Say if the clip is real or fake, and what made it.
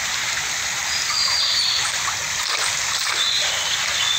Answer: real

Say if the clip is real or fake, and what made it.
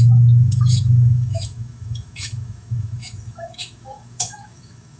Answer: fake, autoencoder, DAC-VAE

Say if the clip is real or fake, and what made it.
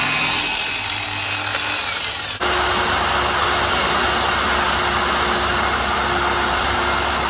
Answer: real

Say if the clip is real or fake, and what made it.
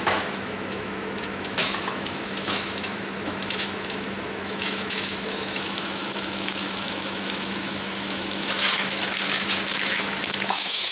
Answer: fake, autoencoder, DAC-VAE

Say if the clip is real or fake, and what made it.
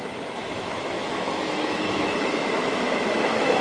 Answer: fake, autoencoder, DAC-VAE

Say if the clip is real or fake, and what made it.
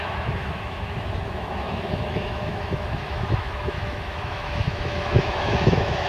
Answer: fake, autoencoder, DAC-VAE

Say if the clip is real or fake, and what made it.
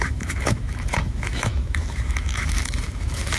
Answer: fake, autoencoder, DAC-VAE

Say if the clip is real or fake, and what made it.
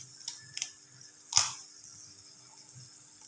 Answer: real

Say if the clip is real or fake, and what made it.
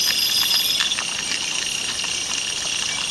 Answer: real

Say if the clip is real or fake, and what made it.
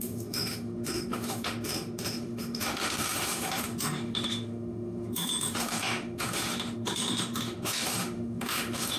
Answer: fake, autoencoder, DAC-VAE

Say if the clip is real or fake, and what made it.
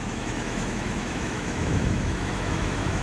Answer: fake, autoencoder, DAC-VAE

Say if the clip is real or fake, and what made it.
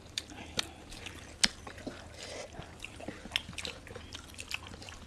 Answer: real